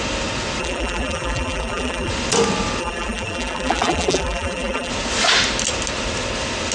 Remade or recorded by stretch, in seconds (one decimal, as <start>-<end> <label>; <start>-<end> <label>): 0.0-0.6 recorded; 0.6-2.1 remade; 2.1-2.8 recorded; 2.8-4.9 remade; 4.9-6.7 recorded